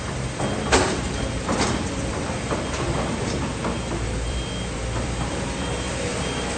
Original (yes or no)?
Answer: no